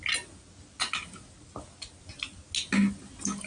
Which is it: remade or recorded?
recorded